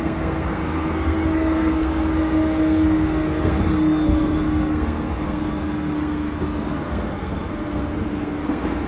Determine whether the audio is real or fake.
fake